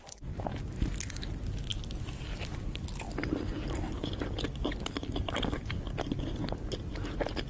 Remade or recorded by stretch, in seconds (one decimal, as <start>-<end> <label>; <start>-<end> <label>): 0.0-7.5 recorded